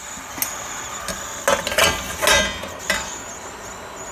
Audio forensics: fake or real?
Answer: real